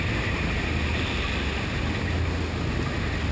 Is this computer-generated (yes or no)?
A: no